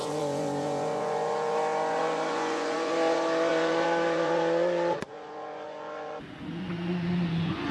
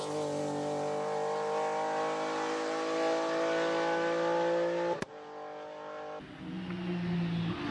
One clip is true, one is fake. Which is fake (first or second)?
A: first